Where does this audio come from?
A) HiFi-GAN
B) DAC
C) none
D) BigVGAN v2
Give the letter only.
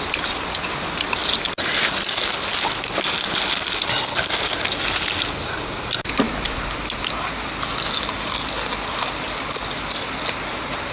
C